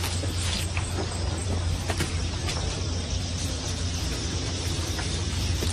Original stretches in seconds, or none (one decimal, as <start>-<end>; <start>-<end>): 0.0-1.4; 4.8-5.7